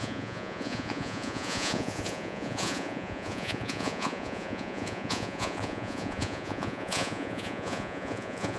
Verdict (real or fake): fake